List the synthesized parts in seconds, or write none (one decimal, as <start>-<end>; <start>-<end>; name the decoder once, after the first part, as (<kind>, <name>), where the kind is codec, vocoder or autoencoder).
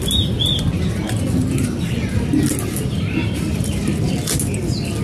3.2-4.1 (vocoder, BigVGAN v2)